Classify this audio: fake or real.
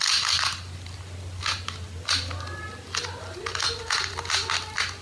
real